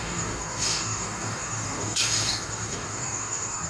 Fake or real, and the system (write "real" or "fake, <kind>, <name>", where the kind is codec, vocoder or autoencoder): fake, codec, DAC